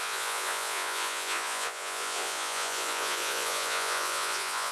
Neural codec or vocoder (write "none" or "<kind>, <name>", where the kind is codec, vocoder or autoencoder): vocoder, Vocos